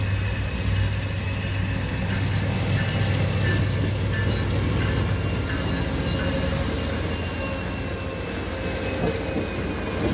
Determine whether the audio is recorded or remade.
recorded